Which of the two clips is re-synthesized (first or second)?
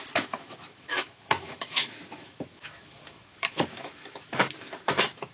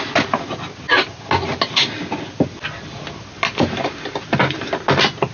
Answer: first